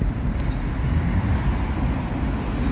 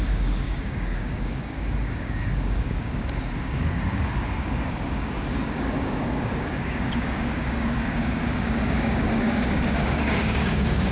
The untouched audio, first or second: first